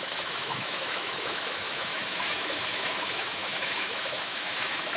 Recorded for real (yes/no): no